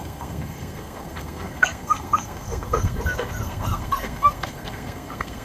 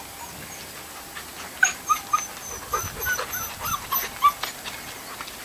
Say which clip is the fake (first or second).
first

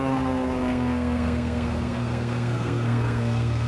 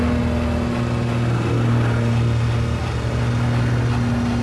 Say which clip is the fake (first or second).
first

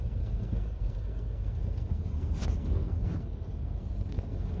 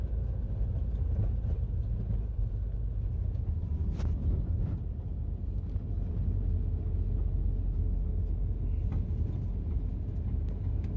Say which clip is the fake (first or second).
first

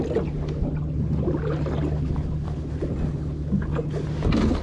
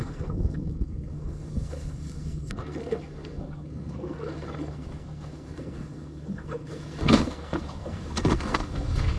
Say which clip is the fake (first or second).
second